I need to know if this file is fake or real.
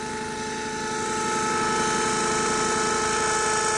real